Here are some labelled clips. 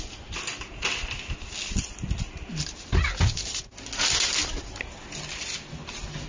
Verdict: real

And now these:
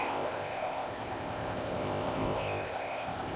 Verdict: fake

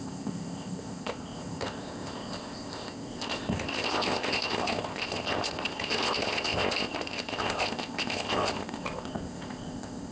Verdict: fake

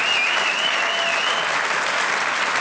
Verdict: real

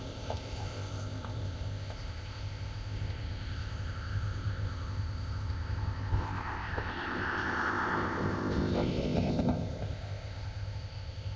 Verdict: fake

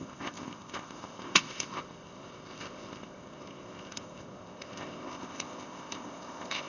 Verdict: fake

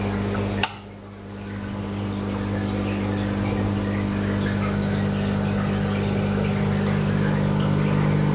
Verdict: real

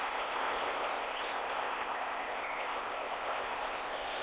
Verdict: fake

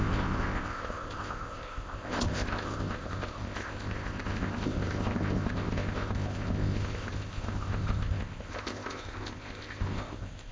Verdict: fake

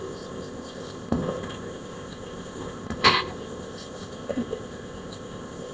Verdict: fake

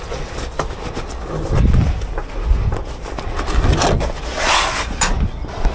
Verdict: real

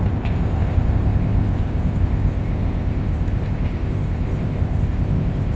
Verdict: fake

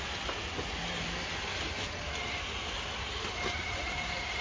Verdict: real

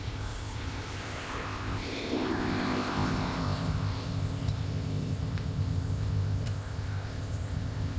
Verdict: fake